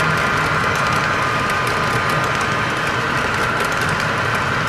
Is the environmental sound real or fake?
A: real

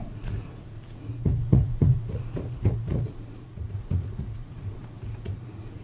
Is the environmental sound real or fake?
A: fake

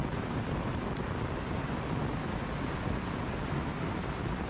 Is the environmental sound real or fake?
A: real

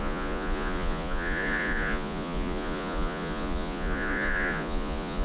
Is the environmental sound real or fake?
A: fake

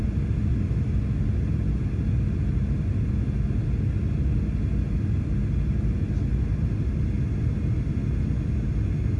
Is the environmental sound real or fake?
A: real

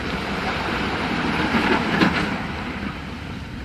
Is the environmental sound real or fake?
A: fake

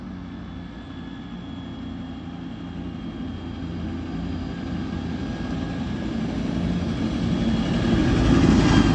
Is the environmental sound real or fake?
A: real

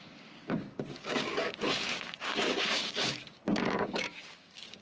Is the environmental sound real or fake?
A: fake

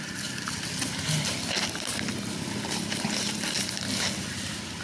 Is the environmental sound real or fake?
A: real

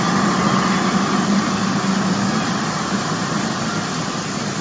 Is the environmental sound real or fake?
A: real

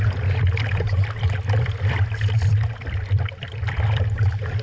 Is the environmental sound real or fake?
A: real